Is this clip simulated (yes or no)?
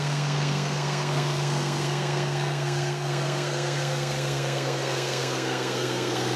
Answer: yes